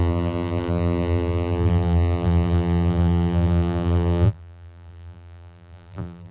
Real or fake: fake